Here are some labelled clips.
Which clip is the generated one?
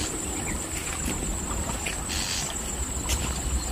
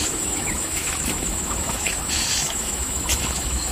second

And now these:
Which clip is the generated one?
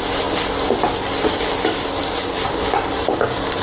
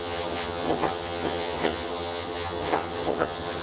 second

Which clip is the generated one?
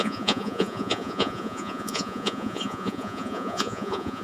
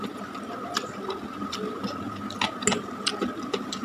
first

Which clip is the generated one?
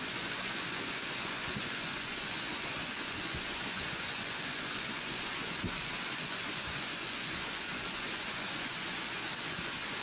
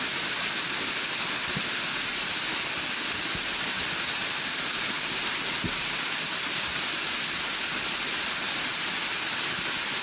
first